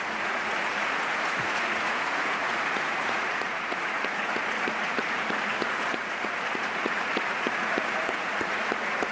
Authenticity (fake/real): fake